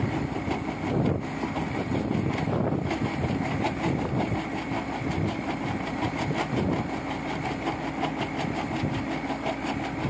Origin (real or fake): real